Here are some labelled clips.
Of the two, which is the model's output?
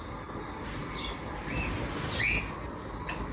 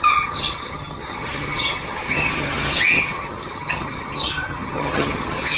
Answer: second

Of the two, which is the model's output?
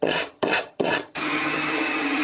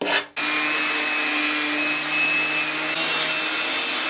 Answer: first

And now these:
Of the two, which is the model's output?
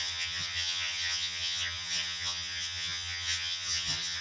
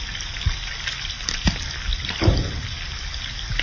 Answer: first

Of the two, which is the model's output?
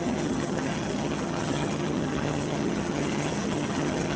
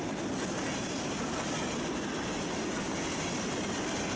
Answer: first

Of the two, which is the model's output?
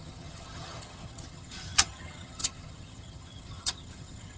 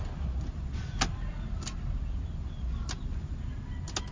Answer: first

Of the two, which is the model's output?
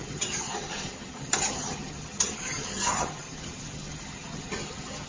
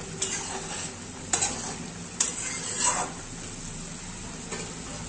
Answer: first